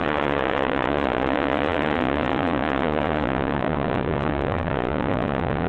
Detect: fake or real fake